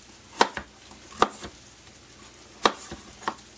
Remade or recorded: recorded